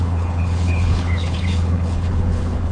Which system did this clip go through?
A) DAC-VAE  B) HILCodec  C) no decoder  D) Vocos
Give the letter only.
B